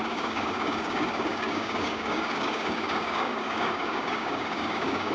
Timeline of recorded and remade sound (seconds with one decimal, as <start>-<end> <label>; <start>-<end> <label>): 0.0-5.1 remade